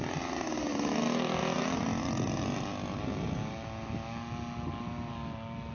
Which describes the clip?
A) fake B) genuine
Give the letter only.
B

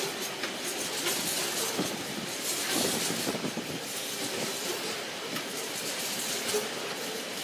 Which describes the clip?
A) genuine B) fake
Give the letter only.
A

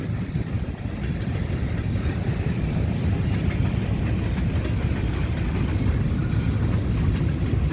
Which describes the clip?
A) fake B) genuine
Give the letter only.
B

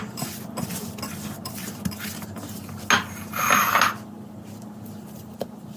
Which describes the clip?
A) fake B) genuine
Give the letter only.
B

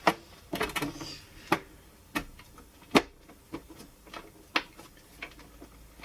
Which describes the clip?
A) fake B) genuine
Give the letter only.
B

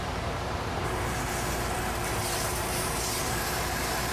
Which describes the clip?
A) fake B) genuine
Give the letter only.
A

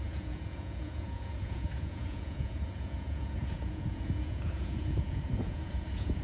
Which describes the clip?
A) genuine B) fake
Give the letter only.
B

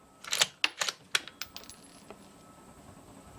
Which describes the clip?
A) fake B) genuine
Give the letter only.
B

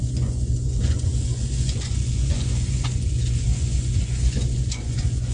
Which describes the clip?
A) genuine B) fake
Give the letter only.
B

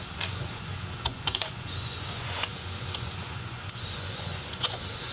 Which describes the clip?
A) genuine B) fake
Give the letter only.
B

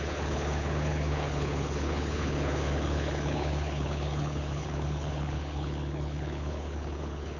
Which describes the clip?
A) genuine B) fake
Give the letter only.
B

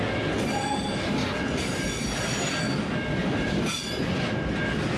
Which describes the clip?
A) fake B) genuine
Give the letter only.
B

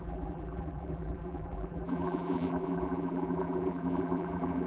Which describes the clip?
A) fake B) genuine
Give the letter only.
A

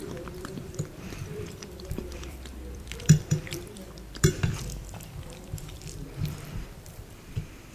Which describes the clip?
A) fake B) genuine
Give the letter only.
A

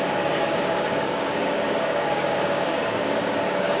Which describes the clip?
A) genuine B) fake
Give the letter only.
B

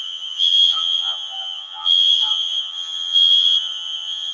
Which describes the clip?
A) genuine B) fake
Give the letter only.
B